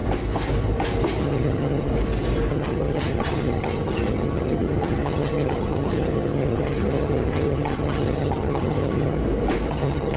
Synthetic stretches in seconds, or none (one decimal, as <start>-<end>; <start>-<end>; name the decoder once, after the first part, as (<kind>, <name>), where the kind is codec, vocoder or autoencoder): 1.2-1.9 (vocoder, HiFi-GAN); 2.5-9.2; 9.7-10.2